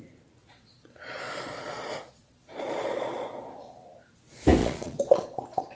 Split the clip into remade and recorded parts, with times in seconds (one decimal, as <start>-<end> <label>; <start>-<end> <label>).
0.0-0.4 recorded; 0.4-3.9 remade; 3.9-4.6 recorded; 4.6-5.8 remade